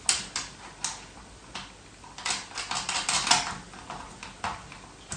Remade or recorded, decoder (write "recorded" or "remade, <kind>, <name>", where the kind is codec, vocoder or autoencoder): recorded